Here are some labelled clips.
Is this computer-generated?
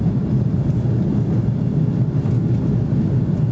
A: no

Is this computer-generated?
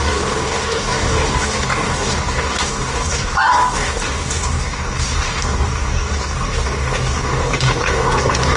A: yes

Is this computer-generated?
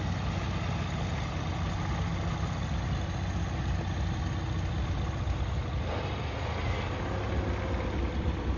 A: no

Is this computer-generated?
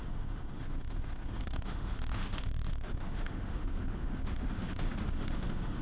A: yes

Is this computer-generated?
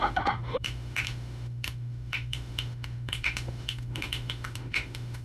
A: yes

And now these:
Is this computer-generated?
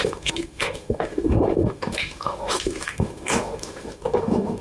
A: yes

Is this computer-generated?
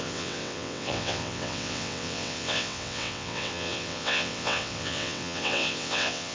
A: yes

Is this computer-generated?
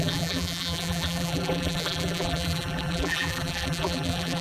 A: yes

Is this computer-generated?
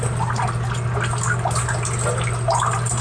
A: no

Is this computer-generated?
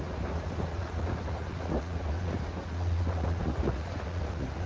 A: yes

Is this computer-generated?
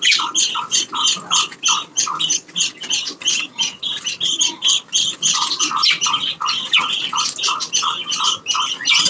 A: no